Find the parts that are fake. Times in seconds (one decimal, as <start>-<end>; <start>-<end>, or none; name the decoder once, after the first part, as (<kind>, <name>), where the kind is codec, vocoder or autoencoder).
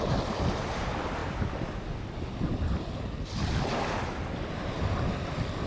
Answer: none